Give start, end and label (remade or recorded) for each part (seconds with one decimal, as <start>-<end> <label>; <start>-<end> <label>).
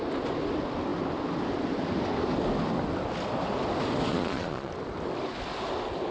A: 0.0-4.1 recorded; 4.1-4.7 remade; 4.7-6.1 recorded